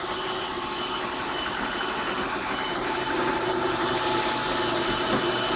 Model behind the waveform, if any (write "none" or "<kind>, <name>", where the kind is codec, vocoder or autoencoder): vocoder, BigVGAN v2